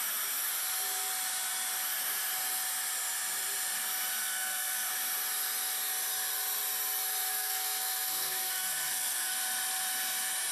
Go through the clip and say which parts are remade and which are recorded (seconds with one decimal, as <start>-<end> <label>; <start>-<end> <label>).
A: 0.0-4.2 recorded; 4.2-4.9 remade; 4.9-7.3 recorded; 7.3-9.3 remade; 9.3-10.5 recorded